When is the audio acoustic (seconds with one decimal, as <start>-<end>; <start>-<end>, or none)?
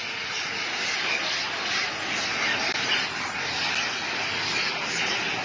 0.0-5.4